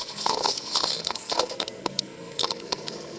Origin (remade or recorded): remade